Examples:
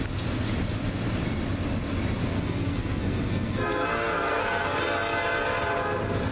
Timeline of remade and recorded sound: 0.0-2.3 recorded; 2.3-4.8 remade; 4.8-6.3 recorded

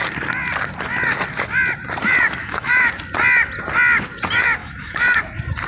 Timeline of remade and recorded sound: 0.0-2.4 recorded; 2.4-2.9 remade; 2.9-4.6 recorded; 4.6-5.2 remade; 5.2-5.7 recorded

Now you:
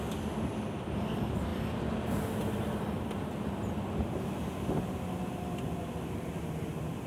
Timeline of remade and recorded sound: 0.0-7.1 recorded